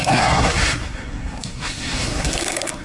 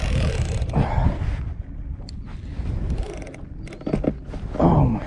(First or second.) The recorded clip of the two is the second